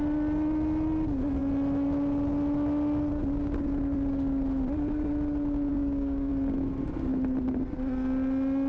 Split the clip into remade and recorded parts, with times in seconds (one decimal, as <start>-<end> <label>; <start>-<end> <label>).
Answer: 0.0-5.7 recorded; 5.7-6.3 remade; 6.3-8.7 recorded